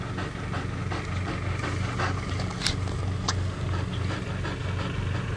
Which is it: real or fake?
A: real